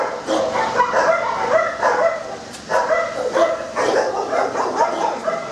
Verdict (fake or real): real